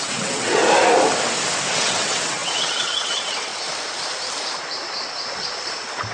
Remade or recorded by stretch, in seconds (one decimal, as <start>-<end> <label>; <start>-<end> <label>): 0.0-0.6 remade; 0.6-1.7 recorded; 1.7-3.5 remade; 3.5-6.1 recorded

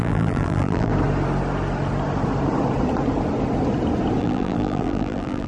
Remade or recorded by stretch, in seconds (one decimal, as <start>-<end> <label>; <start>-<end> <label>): 0.0-0.9 remade; 0.9-4.2 recorded; 4.2-5.5 remade

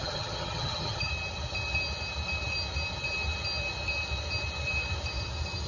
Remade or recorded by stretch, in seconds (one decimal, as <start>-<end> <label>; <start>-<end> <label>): 0.0-1.1 remade; 1.1-5.7 recorded

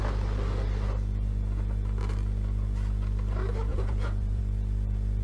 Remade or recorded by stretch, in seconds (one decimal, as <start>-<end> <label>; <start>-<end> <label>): 0.0-3.7 recorded; 3.7-4.4 remade; 4.4-5.2 recorded

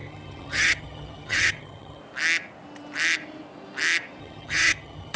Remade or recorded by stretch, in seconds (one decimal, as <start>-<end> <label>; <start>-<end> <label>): 0.0-2.0 remade; 2.0-4.2 recorded; 4.2-5.2 remade

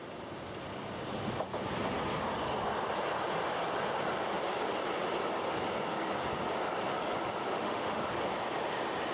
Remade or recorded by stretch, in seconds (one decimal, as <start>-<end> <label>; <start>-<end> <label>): 0.0-7.5 recorded; 7.5-8.0 remade; 8.0-9.1 recorded